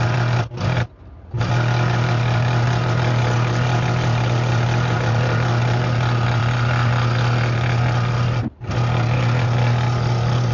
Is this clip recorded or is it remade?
recorded